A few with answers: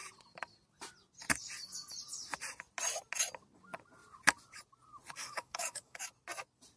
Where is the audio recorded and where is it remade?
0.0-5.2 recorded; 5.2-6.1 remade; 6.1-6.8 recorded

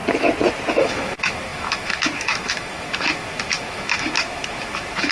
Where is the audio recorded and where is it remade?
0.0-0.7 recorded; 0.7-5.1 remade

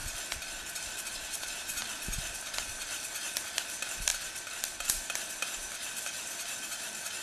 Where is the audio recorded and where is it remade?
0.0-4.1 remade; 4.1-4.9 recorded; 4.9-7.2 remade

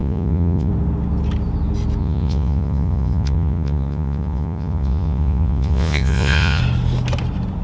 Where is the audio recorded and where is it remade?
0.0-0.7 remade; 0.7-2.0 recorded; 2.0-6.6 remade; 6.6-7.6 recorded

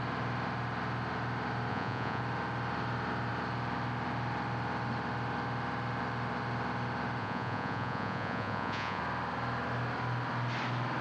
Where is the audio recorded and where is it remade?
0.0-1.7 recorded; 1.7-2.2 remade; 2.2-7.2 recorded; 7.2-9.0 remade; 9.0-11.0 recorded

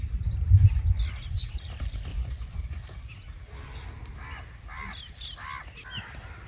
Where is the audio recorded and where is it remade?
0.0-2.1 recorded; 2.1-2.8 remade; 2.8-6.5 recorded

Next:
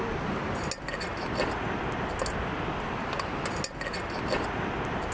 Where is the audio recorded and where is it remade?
0.0-5.1 recorded

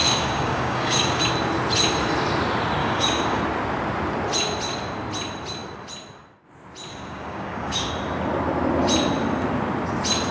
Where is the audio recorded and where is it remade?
0.0-1.2 remade; 1.2-2.8 recorded; 2.8-3.4 remade; 3.4-6.9 recorded; 6.9-7.9 remade; 7.9-10.3 recorded